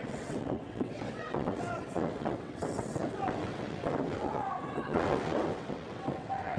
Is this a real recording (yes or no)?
no